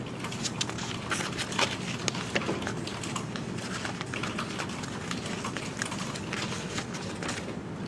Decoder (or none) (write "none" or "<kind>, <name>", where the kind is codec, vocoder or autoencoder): none